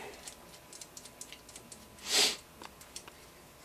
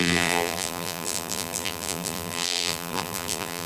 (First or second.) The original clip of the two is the first